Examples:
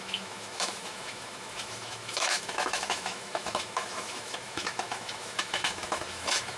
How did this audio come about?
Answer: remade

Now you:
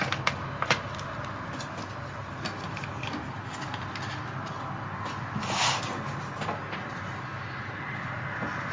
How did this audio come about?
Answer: recorded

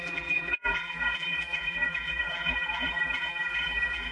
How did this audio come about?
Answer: remade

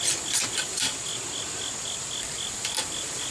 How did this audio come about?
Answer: recorded